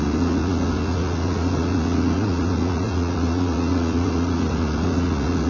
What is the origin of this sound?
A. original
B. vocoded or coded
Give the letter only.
B